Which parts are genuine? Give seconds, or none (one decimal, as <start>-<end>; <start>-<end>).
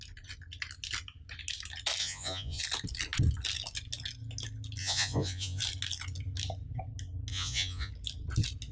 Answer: 0.0-2.0; 2.6-4.8; 5.6-7.3; 7.9-8.7